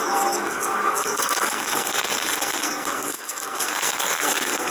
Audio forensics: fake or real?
fake